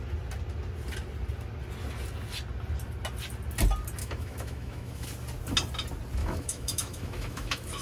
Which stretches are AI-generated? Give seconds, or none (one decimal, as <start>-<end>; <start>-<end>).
4.0-5.1; 6.2-7.8